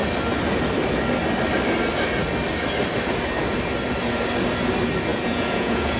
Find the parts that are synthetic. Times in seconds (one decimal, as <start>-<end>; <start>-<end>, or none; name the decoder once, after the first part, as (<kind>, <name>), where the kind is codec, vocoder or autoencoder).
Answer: 5.1-6.0 (vocoder, Vocos)